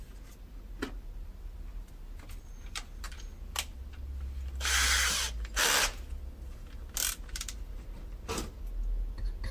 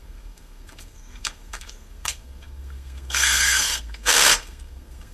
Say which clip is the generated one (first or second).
second